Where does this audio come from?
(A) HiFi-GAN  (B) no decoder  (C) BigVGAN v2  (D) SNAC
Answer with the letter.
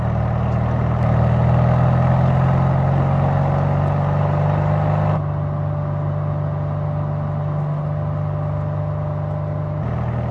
B